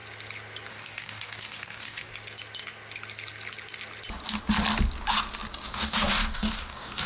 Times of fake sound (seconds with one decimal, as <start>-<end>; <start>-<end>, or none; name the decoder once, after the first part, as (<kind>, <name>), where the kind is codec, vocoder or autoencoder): 0.7-2.1 (codec, DAC); 5.7-7.1